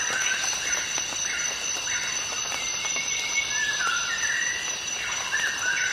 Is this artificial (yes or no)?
no